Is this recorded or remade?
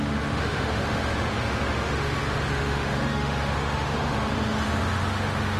remade